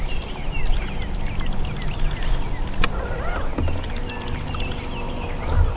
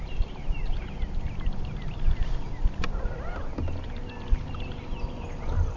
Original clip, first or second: first